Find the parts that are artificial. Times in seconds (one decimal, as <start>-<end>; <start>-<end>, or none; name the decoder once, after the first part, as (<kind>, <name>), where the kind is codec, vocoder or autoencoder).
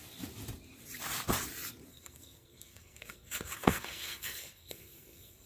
1.9-5.5 (codec, SNAC)